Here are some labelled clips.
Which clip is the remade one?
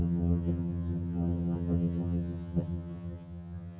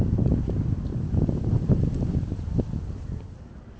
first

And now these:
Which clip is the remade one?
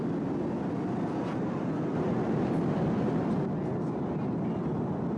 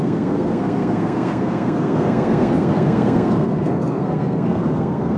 second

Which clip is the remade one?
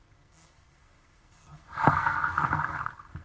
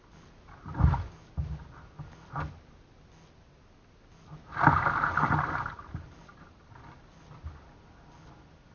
first